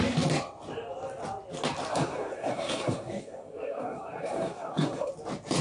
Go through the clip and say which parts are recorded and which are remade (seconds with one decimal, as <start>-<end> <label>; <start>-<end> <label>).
0.0-1.9 recorded; 1.9-5.1 remade; 5.1-5.6 recorded